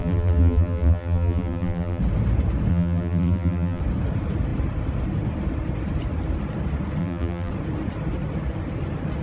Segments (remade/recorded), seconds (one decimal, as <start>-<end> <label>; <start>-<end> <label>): 0.0-2.0 remade; 2.0-2.7 recorded; 2.7-3.8 remade; 3.8-7.0 recorded; 7.0-7.5 remade; 7.5-9.2 recorded